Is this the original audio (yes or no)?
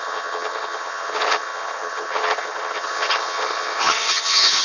no